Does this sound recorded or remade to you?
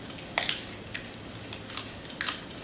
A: recorded